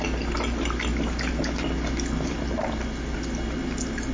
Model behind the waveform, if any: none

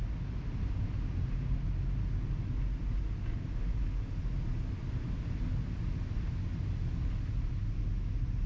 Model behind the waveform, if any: none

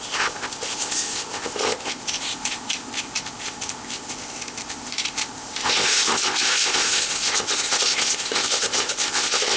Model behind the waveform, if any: codec, ZipCodec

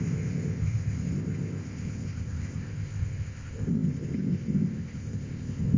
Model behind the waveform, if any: codec, ZipCodec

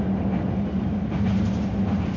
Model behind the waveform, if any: none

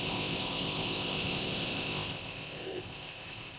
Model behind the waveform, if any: codec, ZipCodec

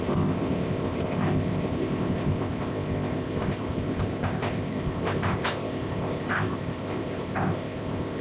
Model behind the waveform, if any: codec, ZipCodec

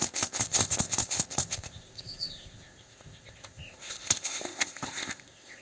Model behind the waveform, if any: codec, ZipCodec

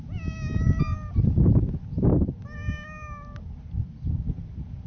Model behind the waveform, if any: none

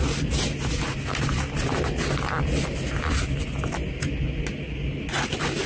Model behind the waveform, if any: none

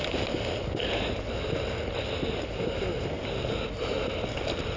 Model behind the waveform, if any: none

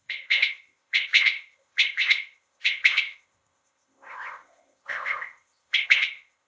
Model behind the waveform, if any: codec, ZipCodec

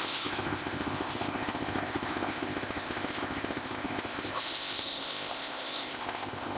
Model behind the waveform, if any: codec, ZipCodec